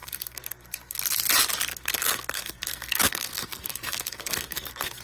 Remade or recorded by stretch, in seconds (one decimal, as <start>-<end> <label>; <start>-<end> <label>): 0.0-1.0 remade; 1.0-1.7 recorded; 1.7-5.0 remade